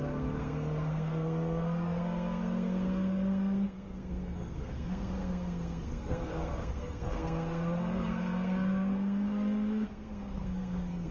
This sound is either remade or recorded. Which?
remade